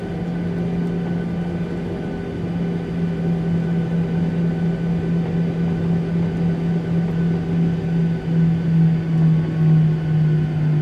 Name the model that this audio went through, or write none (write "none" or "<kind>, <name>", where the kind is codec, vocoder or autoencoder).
none